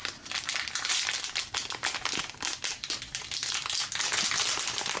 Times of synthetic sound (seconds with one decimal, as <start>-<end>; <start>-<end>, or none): none